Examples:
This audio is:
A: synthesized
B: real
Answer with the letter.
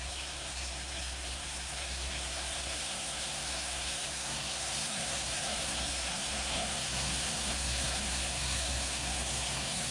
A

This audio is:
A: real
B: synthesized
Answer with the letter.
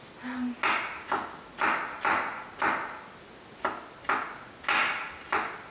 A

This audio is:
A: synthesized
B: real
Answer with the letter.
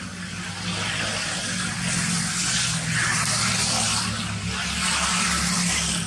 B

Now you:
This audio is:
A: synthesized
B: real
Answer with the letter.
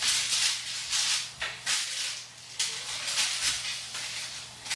B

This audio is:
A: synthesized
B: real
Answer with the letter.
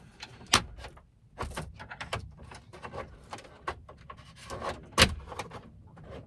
B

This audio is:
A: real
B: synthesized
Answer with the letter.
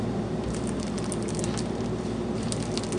A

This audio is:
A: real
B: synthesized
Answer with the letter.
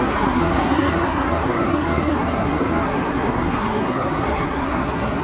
B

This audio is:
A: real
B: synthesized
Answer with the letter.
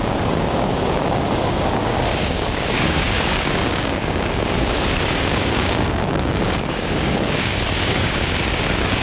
B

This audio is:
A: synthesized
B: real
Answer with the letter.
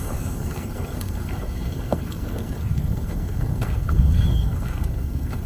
A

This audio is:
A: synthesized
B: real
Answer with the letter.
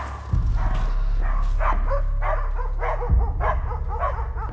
B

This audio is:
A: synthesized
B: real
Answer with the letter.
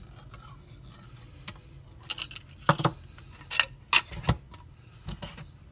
B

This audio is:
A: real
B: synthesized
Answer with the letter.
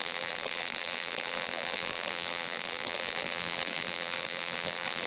B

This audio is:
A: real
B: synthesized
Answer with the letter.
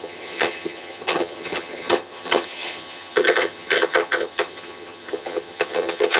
B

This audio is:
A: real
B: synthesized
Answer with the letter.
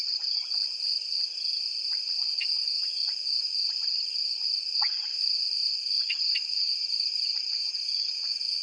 B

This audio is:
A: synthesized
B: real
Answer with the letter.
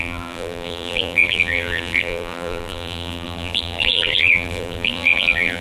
A